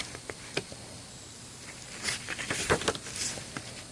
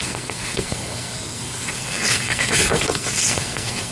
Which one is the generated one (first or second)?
second